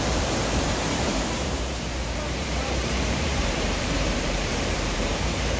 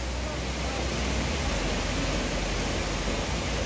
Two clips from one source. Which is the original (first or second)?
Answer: second